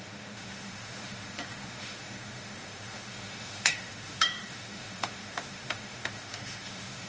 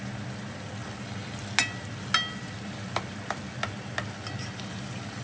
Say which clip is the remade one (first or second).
first